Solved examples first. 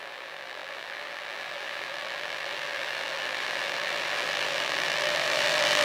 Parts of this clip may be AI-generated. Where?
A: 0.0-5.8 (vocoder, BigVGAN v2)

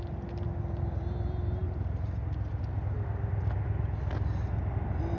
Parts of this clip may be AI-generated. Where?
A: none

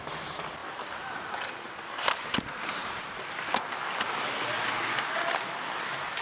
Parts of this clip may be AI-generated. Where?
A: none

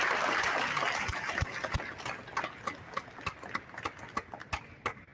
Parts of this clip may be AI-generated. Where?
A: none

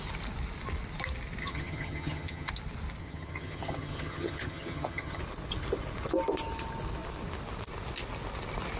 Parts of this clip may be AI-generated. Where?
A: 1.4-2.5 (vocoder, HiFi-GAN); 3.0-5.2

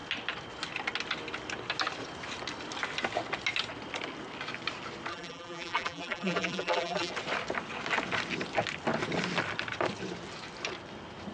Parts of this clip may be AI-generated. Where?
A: 5.1-7.1 (vocoder, BigVGAN v2)

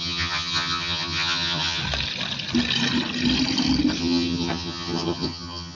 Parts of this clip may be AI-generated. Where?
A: 0.0-1.8 (vocoder, HiFi-GAN); 4.0-5.7